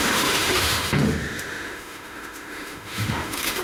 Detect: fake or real fake